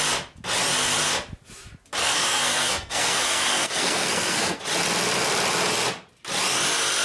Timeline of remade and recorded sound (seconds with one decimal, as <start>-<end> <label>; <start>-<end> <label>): 0.0-2.0 recorded; 2.0-4.6 remade; 4.6-7.0 recorded